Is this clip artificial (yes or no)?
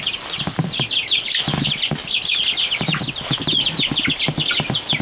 no